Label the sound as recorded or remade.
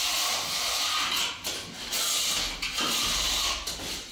recorded